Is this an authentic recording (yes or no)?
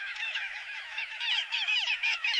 no